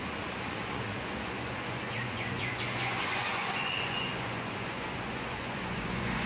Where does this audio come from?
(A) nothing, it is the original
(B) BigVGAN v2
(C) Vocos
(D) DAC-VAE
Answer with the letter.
C